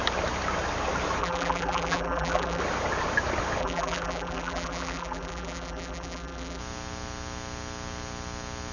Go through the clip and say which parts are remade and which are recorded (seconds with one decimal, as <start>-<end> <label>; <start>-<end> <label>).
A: 0.0-1.2 recorded; 1.2-2.6 remade; 2.6-3.6 recorded; 3.6-6.6 remade; 6.6-8.7 recorded